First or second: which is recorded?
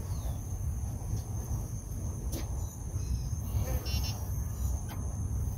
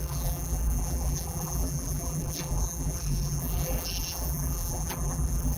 first